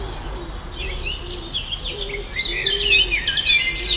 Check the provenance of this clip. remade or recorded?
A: recorded